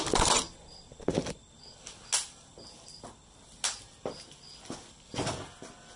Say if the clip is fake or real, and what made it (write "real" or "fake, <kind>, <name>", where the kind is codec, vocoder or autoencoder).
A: real